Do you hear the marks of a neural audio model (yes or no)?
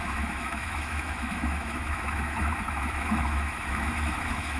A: yes